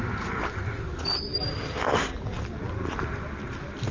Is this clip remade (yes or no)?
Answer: no